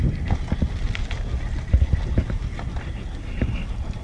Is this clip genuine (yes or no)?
yes